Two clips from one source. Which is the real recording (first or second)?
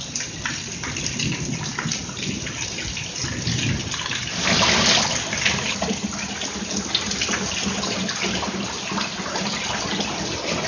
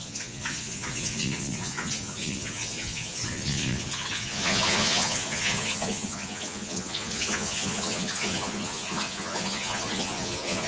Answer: first